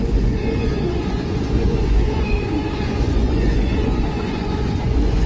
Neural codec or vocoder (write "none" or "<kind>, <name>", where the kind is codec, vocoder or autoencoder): vocoder, Vocos